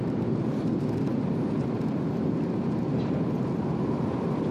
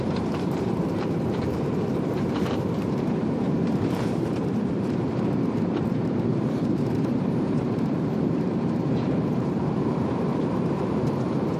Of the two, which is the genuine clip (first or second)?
first